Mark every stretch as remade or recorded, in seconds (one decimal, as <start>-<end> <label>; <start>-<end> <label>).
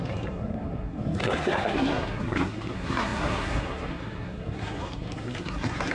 0.0-5.9 remade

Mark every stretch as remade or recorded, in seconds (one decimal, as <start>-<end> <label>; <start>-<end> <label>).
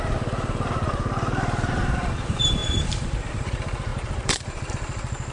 0.0-2.6 remade; 2.6-3.3 recorded; 3.3-5.3 remade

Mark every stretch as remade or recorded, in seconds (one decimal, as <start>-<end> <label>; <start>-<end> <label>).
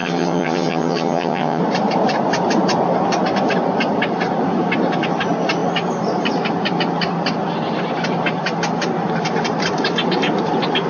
0.0-1.6 remade; 1.6-10.9 recorded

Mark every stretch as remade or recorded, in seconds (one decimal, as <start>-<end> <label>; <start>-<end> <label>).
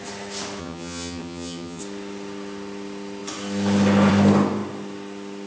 0.0-0.6 recorded; 0.6-1.8 remade; 1.8-5.5 recorded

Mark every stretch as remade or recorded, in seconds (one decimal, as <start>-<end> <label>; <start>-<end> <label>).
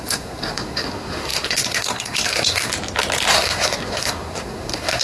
0.0-2.7 remade; 2.7-3.3 recorded; 3.3-5.0 remade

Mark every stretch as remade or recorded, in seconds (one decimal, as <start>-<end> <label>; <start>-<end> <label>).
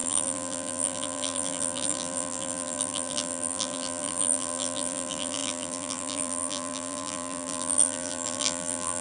0.0-9.0 remade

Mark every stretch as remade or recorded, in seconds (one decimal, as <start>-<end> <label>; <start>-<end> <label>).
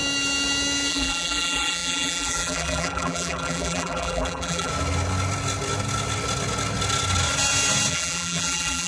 0.0-0.9 recorded; 0.9-4.7 remade; 4.7-7.9 recorded; 7.9-8.9 remade